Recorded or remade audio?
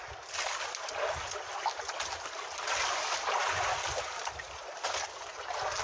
recorded